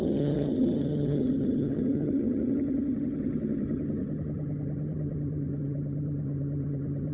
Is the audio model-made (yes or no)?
yes